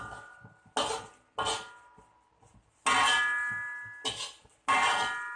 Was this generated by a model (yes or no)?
no